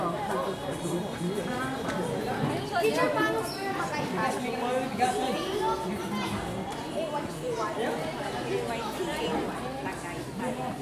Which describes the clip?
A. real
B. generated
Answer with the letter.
A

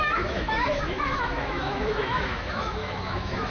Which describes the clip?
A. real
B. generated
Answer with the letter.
B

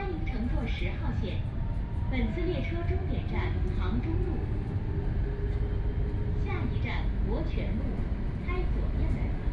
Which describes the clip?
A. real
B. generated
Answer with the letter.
A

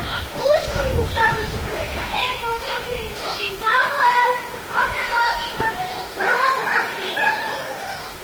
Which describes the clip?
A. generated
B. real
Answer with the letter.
A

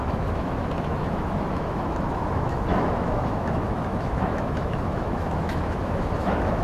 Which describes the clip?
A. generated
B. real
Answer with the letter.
A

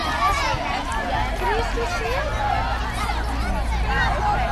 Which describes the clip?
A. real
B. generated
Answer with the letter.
A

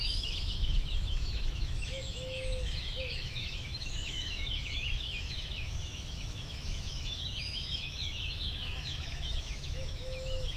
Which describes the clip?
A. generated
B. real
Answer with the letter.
A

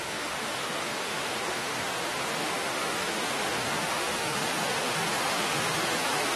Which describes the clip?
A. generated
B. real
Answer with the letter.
A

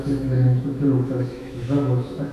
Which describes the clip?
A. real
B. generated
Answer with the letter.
B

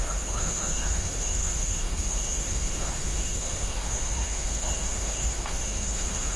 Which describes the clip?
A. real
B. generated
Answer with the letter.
B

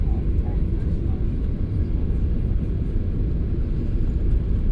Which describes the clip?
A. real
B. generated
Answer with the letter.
A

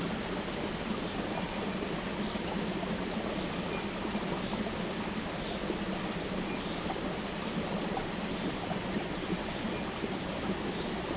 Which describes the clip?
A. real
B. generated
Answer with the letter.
A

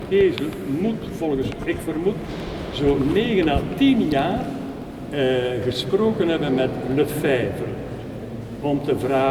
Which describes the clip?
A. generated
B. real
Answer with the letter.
B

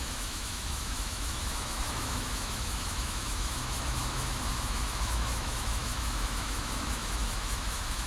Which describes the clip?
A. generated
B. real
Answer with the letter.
A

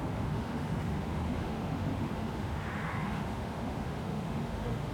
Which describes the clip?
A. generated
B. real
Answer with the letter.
A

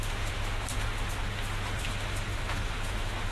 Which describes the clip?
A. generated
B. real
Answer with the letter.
A